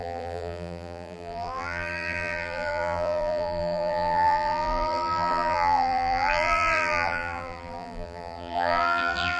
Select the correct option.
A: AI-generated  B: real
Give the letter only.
A